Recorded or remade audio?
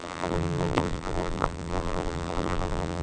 remade